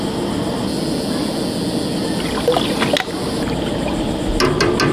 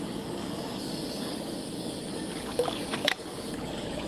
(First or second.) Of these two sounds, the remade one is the second